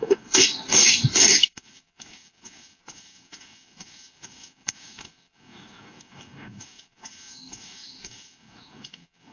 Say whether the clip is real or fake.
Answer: fake